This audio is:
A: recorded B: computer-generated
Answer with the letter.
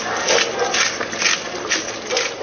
A